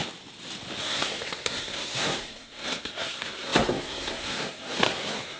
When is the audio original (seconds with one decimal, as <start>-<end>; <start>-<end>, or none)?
0.0-0.8